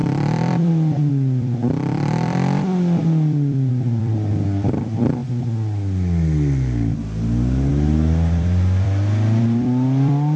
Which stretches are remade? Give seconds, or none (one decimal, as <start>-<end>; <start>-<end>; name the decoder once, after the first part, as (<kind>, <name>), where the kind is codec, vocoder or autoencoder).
0.0-5.2 (vocoder, BigVGAN v2); 7.7-10.4

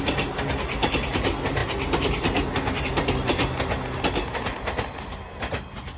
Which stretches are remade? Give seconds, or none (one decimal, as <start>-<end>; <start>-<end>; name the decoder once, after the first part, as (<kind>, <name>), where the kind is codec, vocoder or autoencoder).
none

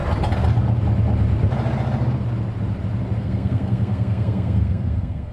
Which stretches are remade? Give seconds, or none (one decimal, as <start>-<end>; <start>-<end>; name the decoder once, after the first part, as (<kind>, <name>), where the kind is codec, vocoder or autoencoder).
3.2-5.3 (codec, SNAC)

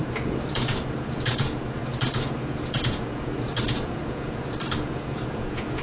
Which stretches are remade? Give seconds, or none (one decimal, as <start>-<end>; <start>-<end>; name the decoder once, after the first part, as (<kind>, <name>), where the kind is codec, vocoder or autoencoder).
0.0-5.8 (vocoder, Vocos)

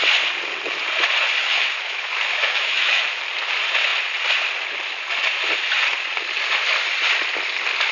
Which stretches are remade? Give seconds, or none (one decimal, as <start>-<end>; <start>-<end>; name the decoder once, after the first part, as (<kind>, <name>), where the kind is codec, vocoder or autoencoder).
1.4-3.2 (autoencoder, DAC-VAE)

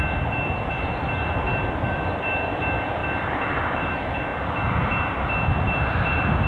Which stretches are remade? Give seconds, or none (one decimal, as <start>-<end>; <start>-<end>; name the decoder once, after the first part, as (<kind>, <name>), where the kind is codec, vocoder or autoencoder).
0.0-4.3 (vocoder, BigVGAN v2); 4.9-6.5